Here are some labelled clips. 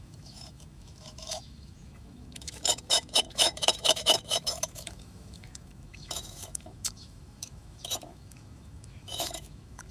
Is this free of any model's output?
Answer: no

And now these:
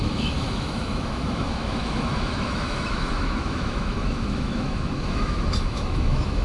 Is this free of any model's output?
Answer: no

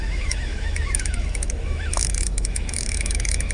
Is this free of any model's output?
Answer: no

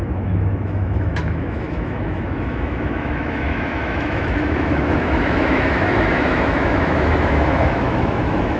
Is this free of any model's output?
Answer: no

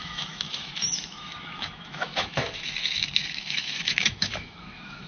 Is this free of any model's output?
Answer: no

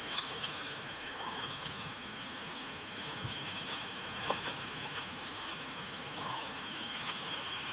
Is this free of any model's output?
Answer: no